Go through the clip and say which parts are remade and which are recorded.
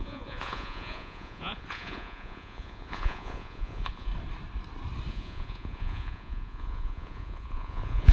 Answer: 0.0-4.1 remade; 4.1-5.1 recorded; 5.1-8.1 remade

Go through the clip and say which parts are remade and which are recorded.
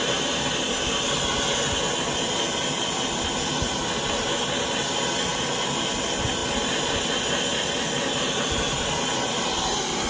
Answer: 0.0-5.3 recorded; 5.3-5.9 remade; 5.9-10.1 recorded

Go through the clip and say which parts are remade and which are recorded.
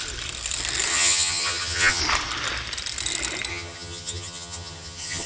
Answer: 0.0-0.9 recorded; 0.9-2.0 remade; 2.0-3.5 recorded; 3.5-5.3 remade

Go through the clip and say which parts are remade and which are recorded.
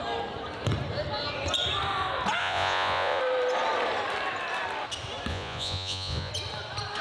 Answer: 0.0-2.4 recorded; 2.4-3.2 remade; 3.2-5.3 recorded; 5.3-6.3 remade; 6.3-7.0 recorded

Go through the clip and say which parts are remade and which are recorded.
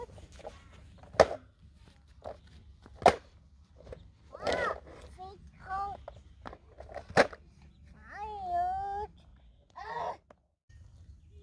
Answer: 0.0-9.3 recorded; 9.3-10.1 remade; 10.1-11.4 recorded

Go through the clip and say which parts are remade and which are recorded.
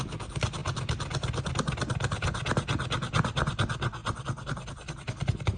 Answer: 0.0-5.6 recorded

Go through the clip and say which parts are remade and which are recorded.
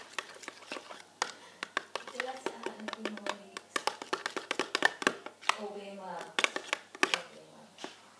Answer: 0.0-8.2 recorded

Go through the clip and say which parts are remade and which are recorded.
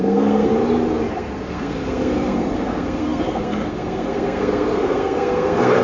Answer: 0.0-0.5 remade; 0.5-1.1 recorded; 1.1-5.8 remade